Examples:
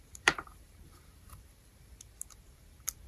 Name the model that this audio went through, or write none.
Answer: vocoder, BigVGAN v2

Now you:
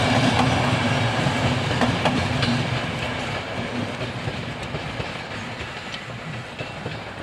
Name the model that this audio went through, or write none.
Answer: none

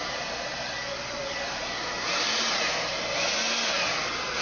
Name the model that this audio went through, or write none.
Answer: none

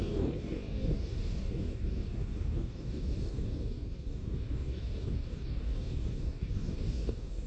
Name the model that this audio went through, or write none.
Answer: codec, DAC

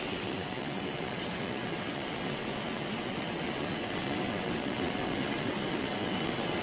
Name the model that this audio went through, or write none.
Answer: vocoder, WaveNeXt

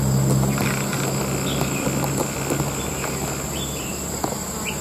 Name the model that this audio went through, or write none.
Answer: none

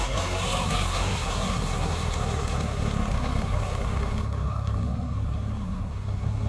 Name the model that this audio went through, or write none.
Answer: codec, SNAC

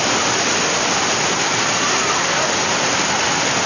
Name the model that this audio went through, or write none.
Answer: none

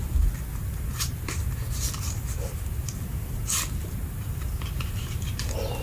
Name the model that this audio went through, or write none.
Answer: none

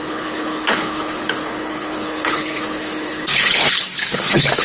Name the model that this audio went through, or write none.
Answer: codec, HILCodec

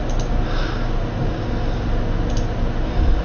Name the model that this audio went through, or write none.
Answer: none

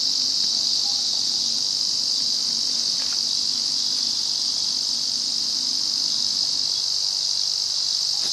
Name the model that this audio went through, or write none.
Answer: none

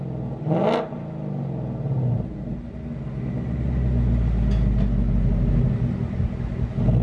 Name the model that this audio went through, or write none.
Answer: none